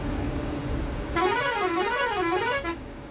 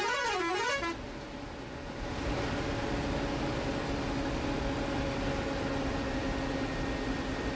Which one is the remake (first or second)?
first